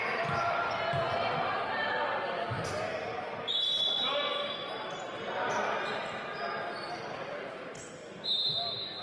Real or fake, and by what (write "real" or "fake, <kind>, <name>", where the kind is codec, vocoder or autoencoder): real